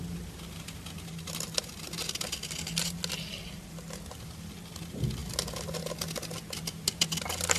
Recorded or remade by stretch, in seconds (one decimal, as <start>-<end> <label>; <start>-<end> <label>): 0.0-7.6 recorded